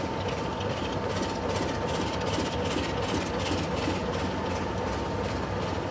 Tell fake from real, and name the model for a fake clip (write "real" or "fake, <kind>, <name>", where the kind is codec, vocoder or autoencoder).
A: real